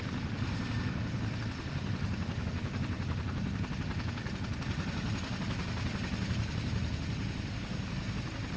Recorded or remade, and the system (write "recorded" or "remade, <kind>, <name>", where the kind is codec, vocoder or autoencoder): recorded